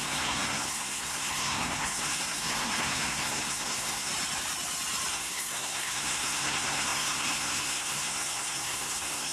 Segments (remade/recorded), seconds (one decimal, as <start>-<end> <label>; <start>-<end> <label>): 0.0-4.1 remade; 4.1-5.1 recorded; 5.1-9.3 remade